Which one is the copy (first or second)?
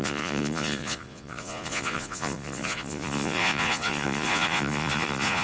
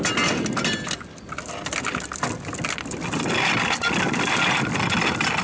first